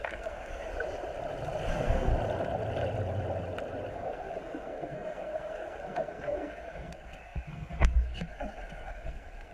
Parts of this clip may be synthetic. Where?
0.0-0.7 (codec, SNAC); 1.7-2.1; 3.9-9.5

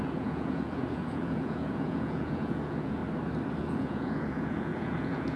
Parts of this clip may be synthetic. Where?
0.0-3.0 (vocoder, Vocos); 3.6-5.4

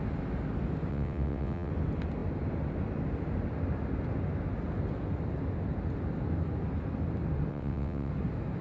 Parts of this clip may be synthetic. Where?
0.9-1.7 (vocoder, WaveNeXt); 7.5-8.1